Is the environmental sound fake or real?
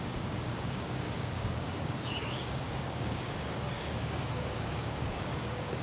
fake